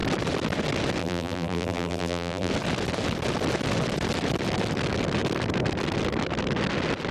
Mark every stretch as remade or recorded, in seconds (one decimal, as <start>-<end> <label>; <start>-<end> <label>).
0.0-1.0 recorded; 1.0-2.5 remade; 2.5-7.1 recorded